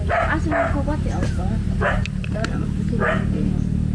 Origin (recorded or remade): recorded